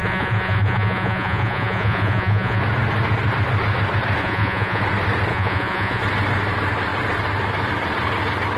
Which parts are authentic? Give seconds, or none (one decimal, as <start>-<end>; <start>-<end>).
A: 2.6-4.2; 4.8-5.3; 6.0-8.6